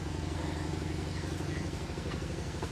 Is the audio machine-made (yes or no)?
yes